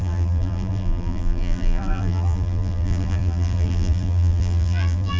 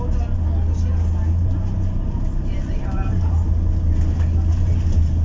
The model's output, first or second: first